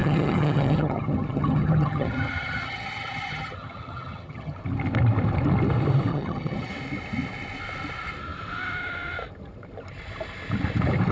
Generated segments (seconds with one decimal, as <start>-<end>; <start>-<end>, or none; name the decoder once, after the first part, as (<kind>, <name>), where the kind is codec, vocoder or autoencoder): 0.0-4.6 (vocoder, HiFi-GAN); 6.1-6.7

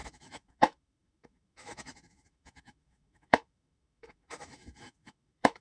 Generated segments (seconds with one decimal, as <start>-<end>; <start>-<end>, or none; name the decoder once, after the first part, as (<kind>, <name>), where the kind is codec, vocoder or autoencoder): 0.0-5.6 (autoencoder, DAC-VAE)

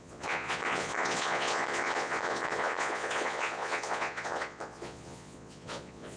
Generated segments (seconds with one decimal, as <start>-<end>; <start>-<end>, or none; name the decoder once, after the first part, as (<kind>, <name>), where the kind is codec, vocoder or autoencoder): 0.0-6.2 (vocoder, Vocos)

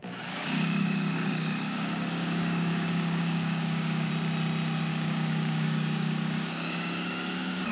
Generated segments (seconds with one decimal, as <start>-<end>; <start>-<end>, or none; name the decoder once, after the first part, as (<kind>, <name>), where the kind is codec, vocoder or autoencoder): 0.0-4.1 (codec, DAC); 4.9-7.7